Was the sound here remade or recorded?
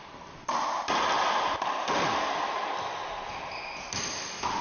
recorded